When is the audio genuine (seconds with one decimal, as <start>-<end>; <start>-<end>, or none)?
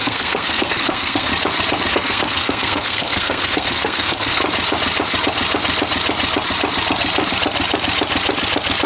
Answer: 1.3-1.9; 4.4-8.9